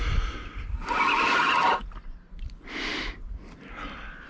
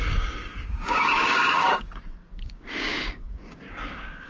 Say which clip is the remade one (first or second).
second